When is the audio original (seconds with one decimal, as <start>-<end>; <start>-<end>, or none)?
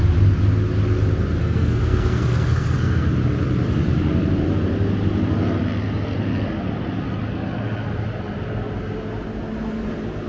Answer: 0.0-1.4; 3.1-10.3